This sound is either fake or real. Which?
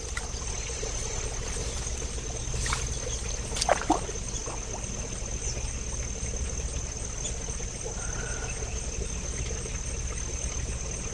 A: real